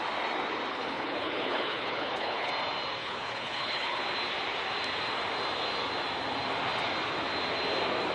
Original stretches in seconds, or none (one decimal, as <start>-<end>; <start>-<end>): 0.0-0.7; 2.5-3.0; 4.0-8.1

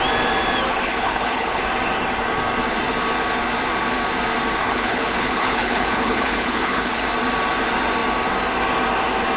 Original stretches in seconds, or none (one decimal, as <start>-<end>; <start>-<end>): 0.0-0.7; 1.6-4.6; 7.0-9.4

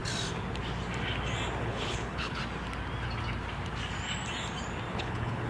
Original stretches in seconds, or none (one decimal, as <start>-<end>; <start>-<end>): 0.0-1.6; 2.4-4.9

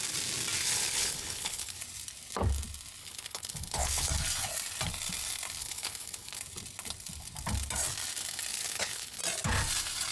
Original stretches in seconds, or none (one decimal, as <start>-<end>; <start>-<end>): 0.0-0.6; 1.8-3.0; 4.1-5.6; 6.4-8.5; 9.2-10.1

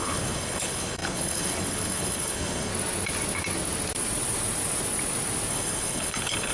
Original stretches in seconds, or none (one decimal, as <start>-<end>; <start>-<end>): 2.7-5.5

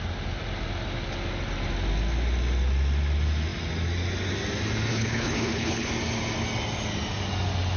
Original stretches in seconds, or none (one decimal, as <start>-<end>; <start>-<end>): 0.0-4.9; 5.9-7.8

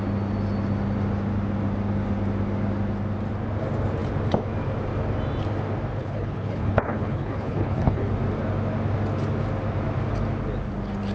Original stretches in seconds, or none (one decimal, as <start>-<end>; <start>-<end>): 0.0-6.0; 8.1-11.1